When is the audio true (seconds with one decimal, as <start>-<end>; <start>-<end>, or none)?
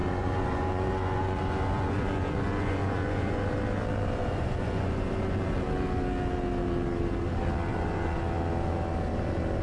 3.5-4.2; 5.1-7.7; 8.2-9.6